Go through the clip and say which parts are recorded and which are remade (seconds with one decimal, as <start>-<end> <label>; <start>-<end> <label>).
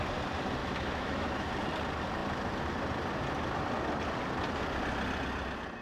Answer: 0.0-0.6 recorded; 0.6-1.5 remade; 1.5-5.8 recorded